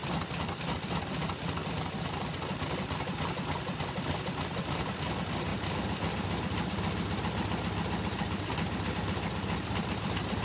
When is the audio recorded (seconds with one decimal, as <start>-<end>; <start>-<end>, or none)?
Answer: 0.0-10.4